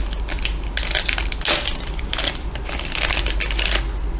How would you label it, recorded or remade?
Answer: recorded